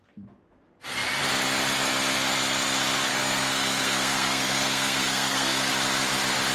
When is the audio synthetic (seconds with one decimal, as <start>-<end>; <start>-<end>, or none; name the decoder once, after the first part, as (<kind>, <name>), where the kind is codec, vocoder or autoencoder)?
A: 3.1-5.7 (codec, SNAC)